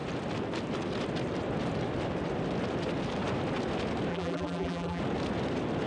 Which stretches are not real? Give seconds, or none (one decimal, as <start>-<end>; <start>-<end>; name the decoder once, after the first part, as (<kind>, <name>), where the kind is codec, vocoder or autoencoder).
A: 4.1-5.0 (vocoder, BigVGAN v2)